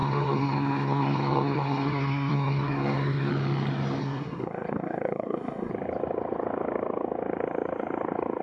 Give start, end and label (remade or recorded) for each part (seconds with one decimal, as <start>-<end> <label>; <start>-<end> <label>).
0.0-3.3 remade; 3.3-4.0 recorded; 4.0-5.7 remade; 5.7-8.4 recorded